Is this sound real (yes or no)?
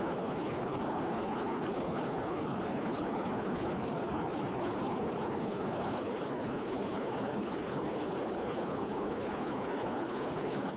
no